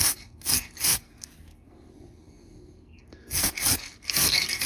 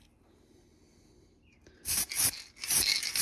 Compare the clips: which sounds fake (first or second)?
first